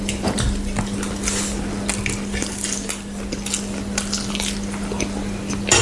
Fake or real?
real